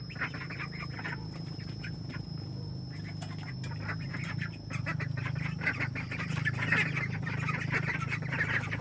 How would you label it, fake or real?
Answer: real